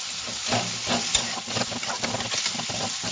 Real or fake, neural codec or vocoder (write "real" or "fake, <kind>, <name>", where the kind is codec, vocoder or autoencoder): real